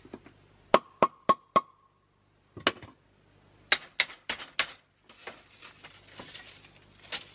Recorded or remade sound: recorded